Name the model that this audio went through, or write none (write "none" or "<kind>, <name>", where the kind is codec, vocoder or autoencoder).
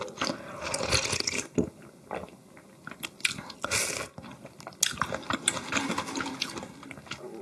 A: none